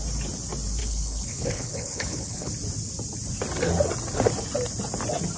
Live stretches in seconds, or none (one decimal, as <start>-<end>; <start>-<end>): 0.0-0.8; 2.5-5.4